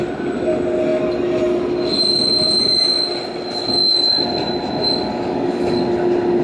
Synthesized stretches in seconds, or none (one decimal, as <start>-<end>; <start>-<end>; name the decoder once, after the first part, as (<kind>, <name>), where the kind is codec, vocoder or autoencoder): 5.1-5.8 (codec, DAC)